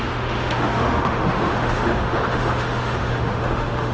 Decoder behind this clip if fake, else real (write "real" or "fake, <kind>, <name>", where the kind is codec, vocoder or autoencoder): fake, autoencoder, DAC-VAE